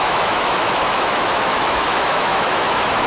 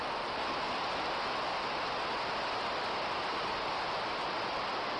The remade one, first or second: first